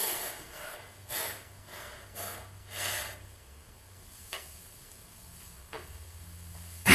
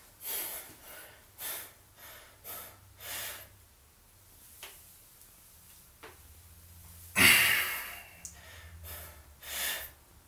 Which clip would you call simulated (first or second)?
first